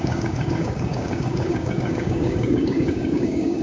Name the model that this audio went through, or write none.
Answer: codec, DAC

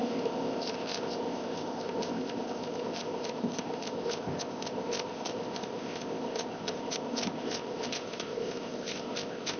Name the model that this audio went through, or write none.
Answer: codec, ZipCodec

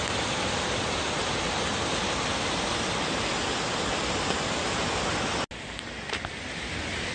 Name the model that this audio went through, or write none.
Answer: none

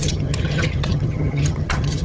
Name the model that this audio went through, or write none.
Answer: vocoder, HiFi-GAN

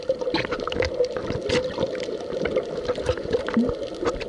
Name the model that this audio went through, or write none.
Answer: none